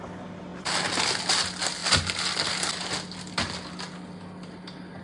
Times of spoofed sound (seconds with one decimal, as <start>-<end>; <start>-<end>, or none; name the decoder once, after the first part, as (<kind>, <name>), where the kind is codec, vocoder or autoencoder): none